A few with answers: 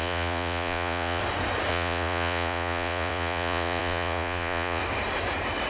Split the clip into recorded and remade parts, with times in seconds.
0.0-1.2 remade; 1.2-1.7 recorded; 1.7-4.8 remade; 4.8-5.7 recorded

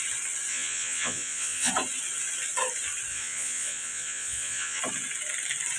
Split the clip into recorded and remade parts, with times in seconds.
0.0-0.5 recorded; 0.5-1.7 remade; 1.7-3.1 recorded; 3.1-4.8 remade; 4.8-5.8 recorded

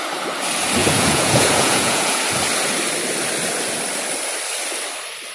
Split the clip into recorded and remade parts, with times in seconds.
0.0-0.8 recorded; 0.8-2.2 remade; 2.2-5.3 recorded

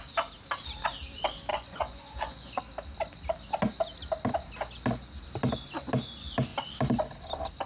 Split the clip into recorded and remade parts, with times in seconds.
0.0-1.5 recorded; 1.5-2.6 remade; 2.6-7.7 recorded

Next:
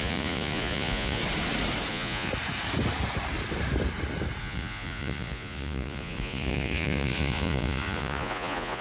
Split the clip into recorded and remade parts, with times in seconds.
0.0-1.2 remade; 1.2-1.9 recorded; 1.9-2.3 remade; 2.3-4.4 recorded; 4.4-8.8 remade